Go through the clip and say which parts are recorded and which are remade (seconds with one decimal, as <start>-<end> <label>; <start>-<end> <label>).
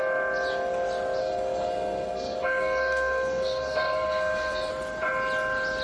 0.0-1.2 recorded; 1.2-4.7 remade; 4.7-5.8 recorded